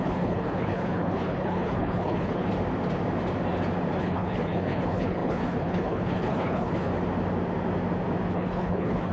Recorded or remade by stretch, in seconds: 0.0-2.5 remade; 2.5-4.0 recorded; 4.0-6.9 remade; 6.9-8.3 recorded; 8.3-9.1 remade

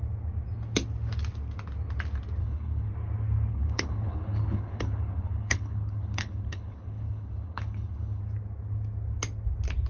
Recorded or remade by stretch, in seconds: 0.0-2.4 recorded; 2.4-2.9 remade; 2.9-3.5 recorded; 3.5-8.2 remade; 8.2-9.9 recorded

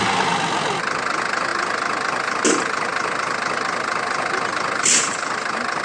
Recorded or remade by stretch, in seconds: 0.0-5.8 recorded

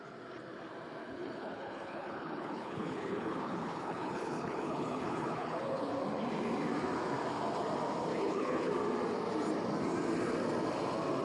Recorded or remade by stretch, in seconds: 0.0-1.0 recorded; 1.0-5.9 remade; 5.9-8.1 recorded; 8.1-8.7 remade; 8.7-11.2 recorded

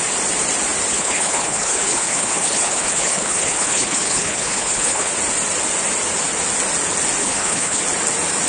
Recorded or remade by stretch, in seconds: 0.0-0.9 recorded; 0.9-5.1 remade; 5.1-7.2 recorded; 7.2-7.8 remade; 7.8-8.5 recorded